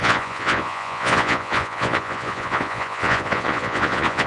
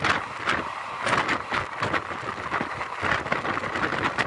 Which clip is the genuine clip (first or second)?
second